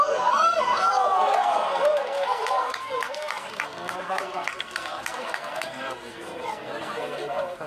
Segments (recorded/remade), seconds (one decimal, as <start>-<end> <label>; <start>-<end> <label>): 0.0-7.7 remade